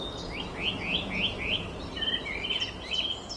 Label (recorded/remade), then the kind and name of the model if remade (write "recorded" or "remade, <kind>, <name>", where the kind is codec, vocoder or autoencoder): recorded